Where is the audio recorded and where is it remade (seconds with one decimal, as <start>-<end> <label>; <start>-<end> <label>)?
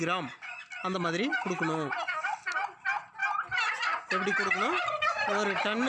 0.0-5.9 recorded